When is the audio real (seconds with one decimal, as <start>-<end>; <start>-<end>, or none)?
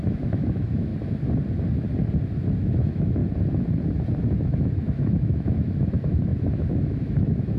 0.9-2.6; 3.2-4.4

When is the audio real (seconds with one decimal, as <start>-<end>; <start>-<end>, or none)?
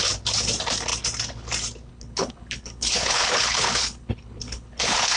0.0-1.9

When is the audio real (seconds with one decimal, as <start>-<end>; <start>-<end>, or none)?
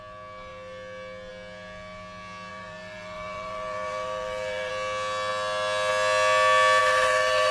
0.0-2.5; 4.7-6.8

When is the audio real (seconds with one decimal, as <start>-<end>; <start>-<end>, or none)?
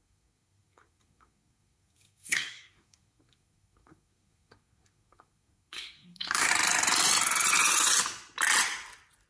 6.5-9.3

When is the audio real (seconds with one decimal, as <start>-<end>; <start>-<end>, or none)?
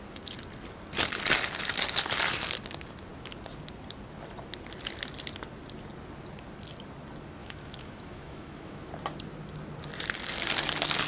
0.0-7.4; 8.9-11.1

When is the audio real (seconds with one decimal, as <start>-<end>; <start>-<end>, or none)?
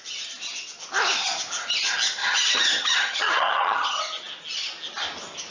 0.0-2.2; 4.0-5.5